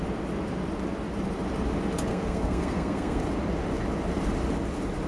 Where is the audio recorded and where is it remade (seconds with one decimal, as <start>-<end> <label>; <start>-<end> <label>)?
0.0-2.1 recorded; 2.1-3.2 remade; 3.2-5.1 recorded